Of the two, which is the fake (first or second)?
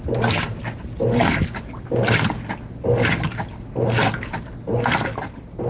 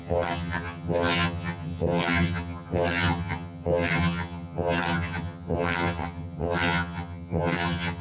second